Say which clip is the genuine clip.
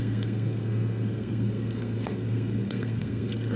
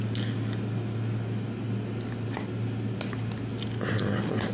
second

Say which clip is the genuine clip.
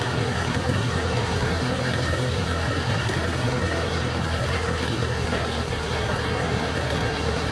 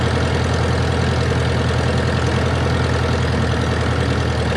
second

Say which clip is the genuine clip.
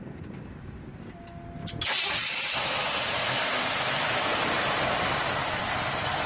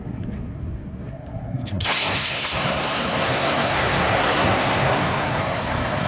first